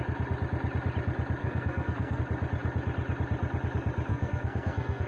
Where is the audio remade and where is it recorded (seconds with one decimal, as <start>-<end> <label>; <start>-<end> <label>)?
0.0-1.4 recorded; 1.4-2.2 remade; 2.2-4.1 recorded; 4.1-5.1 remade